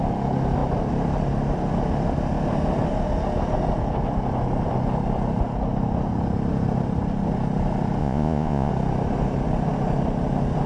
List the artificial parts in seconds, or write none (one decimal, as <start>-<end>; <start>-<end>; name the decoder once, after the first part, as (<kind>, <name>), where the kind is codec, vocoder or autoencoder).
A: 8.0-8.7 (vocoder, Vocos)